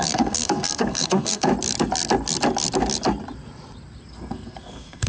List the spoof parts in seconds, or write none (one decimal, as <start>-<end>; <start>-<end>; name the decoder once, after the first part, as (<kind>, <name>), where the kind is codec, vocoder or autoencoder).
0.0-1.5 (codec, SNAC); 4.1-5.1